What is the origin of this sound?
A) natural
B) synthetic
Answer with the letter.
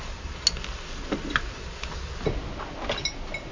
A